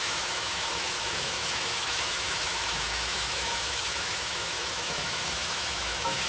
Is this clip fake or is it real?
fake